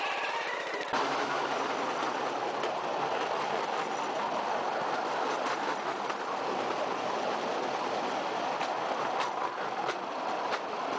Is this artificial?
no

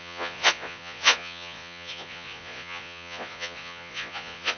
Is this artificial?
yes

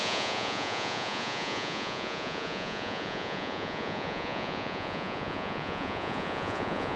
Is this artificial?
yes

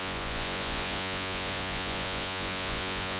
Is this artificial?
yes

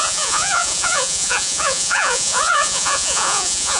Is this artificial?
yes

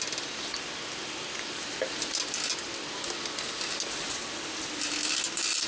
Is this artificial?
no